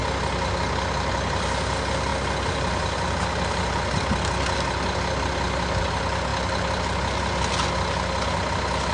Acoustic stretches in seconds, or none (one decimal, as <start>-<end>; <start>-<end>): 0.0-8.9